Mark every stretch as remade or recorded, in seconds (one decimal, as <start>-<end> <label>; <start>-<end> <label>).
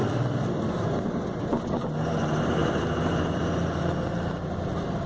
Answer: 0.0-0.5 remade; 0.5-2.6 recorded; 2.6-3.5 remade; 3.5-5.1 recorded